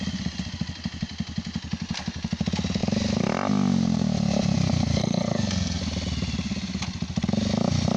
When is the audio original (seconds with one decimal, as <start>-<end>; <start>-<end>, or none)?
0.0-5.0; 5.8-8.0